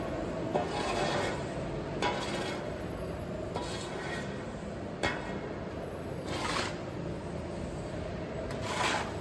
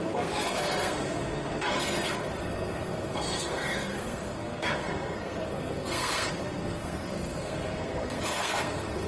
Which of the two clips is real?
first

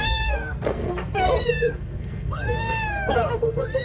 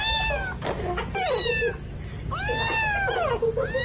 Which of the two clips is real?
second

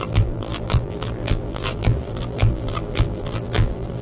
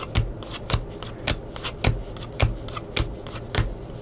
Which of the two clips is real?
second